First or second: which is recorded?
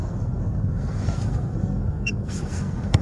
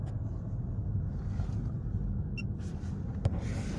second